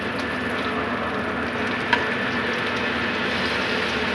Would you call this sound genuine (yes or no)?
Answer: yes